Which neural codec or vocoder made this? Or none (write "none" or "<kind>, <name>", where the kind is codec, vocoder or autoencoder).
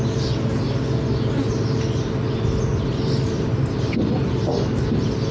none